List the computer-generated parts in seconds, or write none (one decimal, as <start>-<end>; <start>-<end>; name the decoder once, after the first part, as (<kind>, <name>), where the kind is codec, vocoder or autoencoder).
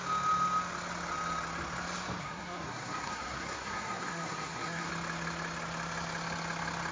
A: 2.2-4.9 (codec, SNAC)